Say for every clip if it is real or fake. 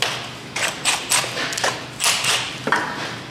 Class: real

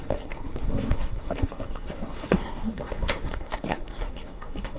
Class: fake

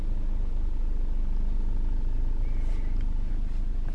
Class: fake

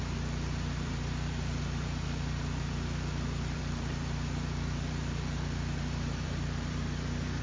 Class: fake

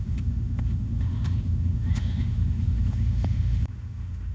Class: fake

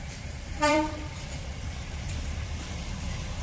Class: fake